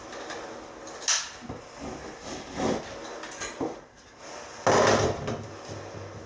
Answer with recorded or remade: recorded